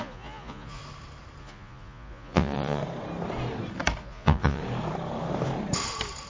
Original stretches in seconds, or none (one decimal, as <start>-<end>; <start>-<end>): 0.8-1.4; 2.8-4.0; 4.6-6.3